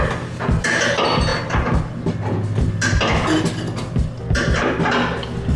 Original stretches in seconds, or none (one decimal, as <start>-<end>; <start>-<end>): 0.0-5.6